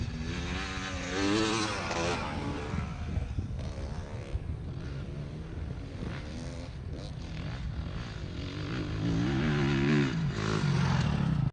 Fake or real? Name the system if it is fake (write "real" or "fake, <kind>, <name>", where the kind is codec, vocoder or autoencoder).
real